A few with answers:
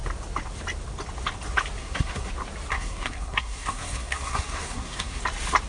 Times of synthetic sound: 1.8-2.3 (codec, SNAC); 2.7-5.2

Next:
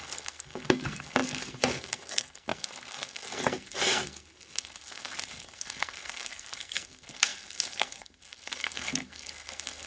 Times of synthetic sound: 0.0-9.9 (codec, SNAC)

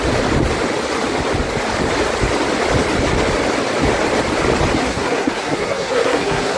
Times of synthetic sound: 4.8-6.6 (codec, SNAC)